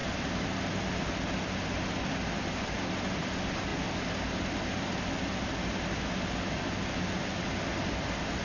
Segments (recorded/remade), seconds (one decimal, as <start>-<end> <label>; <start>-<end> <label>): 0.0-8.4 recorded

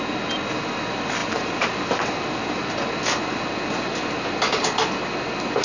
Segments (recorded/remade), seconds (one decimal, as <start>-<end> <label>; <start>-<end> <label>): 0.0-5.6 recorded

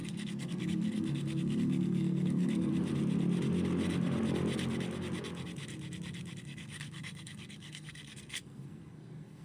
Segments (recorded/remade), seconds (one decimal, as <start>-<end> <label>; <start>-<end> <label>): 0.0-2.7 remade; 2.7-6.4 recorded; 6.4-9.4 remade

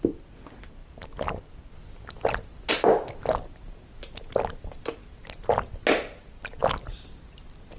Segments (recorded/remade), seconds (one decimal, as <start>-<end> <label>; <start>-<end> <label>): 0.0-7.8 recorded

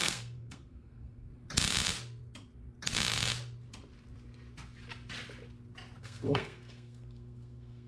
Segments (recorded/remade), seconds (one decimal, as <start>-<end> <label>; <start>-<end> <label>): 0.0-1.3 remade; 1.3-6.0 recorded; 6.0-7.9 remade

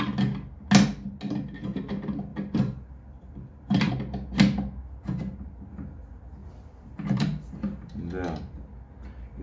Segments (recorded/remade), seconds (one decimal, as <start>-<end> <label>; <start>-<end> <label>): 0.0-2.3 recorded; 2.3-3.9 remade; 3.9-6.4 recorded; 6.4-7.9 remade; 7.9-9.4 recorded

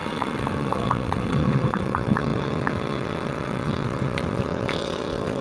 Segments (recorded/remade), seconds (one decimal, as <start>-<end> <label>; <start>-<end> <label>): 0.0-5.4 remade

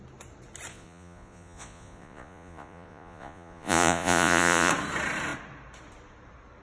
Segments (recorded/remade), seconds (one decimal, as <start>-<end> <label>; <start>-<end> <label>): 0.0-0.7 recorded; 0.7-4.7 remade; 4.7-6.6 recorded